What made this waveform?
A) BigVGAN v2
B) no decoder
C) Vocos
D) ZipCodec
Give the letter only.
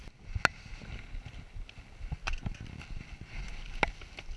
B